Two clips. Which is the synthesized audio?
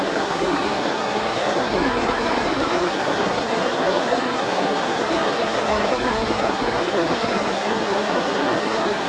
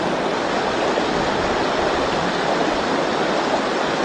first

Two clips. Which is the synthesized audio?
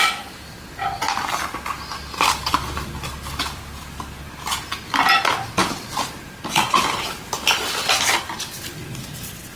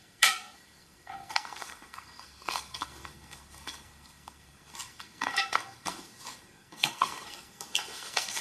second